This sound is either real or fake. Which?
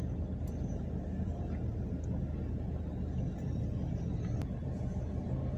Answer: real